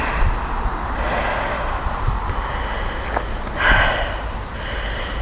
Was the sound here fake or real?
real